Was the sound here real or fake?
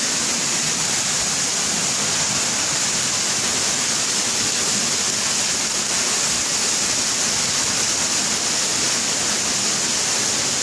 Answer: real